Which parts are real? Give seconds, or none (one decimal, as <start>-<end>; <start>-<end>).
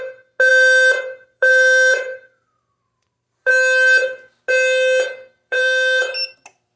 0.0-0.5; 3.5-5.3; 6.0-6.8